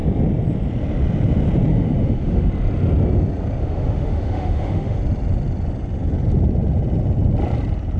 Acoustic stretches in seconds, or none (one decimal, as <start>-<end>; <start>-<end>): 0.0-1.7; 2.5-3.6; 5.0-8.0